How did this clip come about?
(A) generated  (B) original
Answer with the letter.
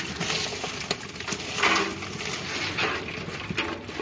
B